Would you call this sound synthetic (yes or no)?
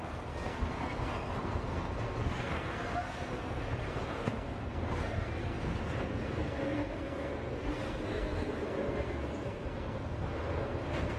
yes